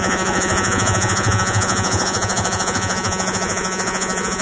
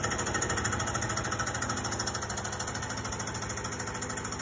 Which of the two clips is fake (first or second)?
first